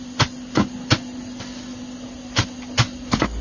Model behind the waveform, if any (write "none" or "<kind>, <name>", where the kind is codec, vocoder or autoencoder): none